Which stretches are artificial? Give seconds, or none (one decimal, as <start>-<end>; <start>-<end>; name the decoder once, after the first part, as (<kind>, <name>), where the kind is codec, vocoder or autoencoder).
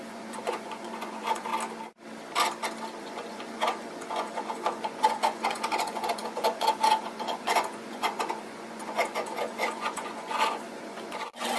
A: 0.0-1.5 (vocoder, Vocos); 3.0-11.6